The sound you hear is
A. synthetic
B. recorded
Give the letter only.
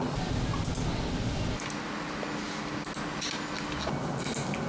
B